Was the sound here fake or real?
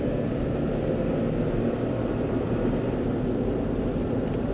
real